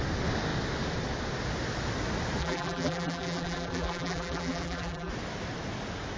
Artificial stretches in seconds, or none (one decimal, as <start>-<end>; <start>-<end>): 2.4-5.1